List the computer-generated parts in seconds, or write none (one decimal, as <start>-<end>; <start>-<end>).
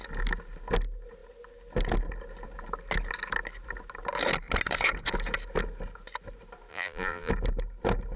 6.7-7.3